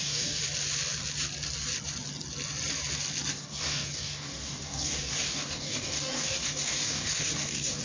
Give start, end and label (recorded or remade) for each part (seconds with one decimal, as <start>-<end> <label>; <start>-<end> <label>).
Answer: 0.0-0.4 remade; 0.4-3.3 recorded; 3.3-7.8 remade